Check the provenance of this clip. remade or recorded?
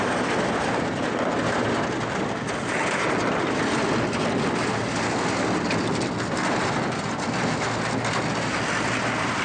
recorded